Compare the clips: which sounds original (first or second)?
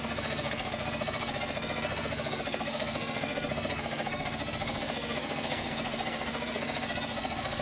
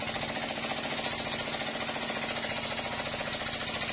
second